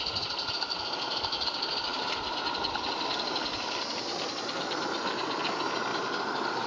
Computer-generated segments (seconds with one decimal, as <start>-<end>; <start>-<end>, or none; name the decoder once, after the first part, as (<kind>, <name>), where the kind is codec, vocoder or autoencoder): 1.9-5.1 (vocoder, BigVGAN v2); 5.9-6.7